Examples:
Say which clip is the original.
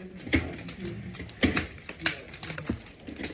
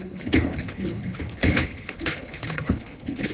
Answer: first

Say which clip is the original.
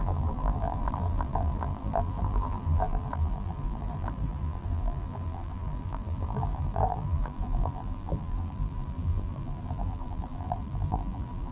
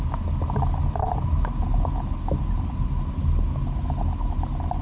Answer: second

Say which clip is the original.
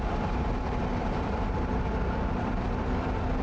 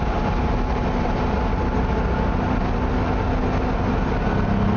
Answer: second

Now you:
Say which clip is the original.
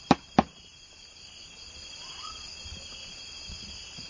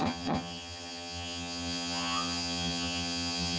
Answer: first